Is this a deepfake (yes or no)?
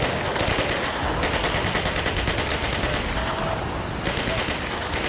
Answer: no